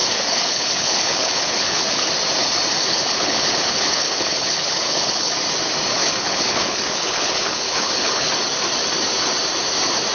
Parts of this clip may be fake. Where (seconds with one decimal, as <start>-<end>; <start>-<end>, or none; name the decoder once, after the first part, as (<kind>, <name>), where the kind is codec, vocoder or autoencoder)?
0.0-2.1 (codec, HILCodec); 2.8-5.3; 5.9-8.3